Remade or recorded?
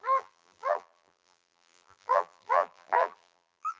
remade